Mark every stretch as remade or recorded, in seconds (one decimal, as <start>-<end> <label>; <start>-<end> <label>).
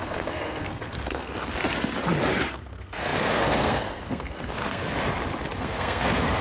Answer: 0.0-1.5 remade; 1.5-2.3 recorded; 2.3-4.8 remade; 4.8-5.6 recorded; 5.6-6.4 remade